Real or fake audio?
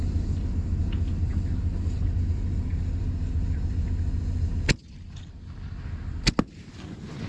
real